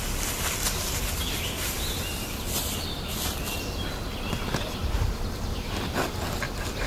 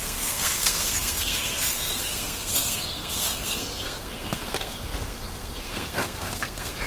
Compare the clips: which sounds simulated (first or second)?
second